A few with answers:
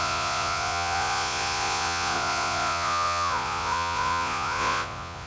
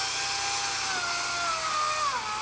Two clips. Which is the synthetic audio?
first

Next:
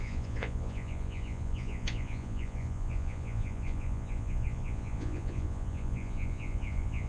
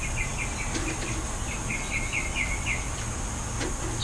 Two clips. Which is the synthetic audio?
first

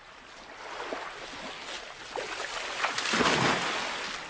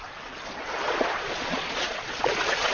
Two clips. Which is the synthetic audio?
second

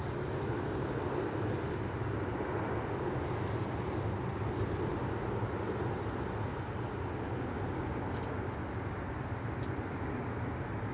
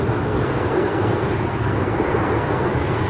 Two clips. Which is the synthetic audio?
second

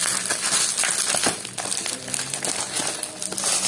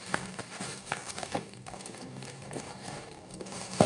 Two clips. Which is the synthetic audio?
second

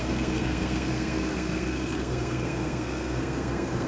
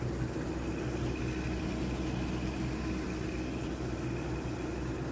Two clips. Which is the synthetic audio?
first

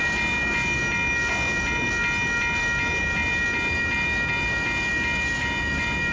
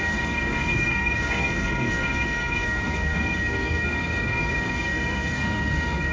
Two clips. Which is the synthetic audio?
second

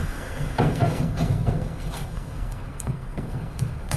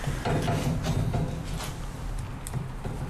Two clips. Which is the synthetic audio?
first